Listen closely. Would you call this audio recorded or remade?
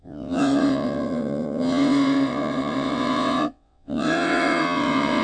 remade